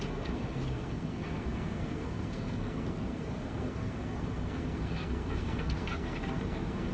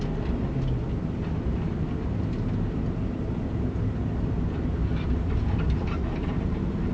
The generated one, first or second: first